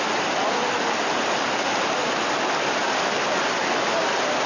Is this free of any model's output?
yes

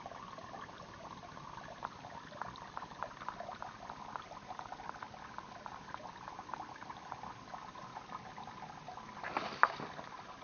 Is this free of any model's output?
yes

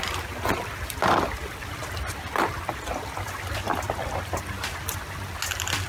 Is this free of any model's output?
yes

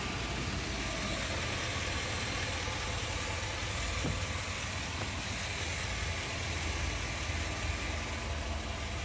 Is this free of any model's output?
yes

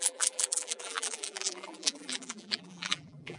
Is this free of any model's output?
no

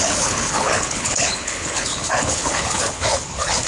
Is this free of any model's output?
no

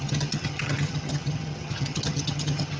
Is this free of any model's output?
no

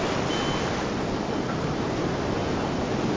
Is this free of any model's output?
yes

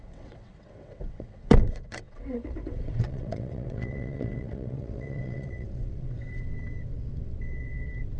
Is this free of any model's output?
no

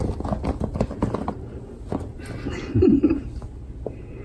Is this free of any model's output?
yes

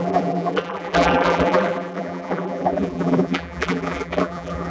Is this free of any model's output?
no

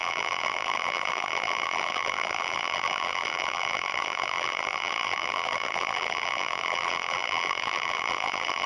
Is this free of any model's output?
no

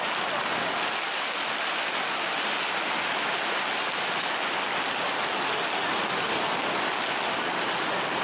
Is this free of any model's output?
yes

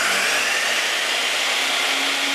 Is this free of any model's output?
yes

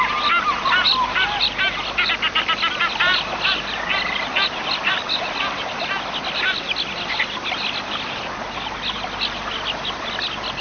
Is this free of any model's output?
yes